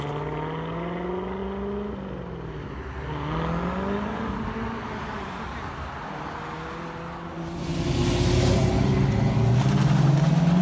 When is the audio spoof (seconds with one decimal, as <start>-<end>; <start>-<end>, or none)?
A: none